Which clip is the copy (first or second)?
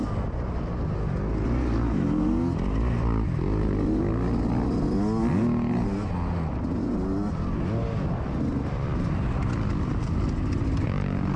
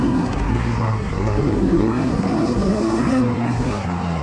second